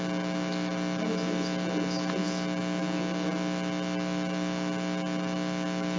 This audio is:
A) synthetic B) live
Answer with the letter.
B